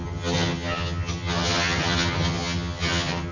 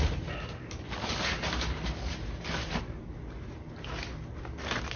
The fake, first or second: first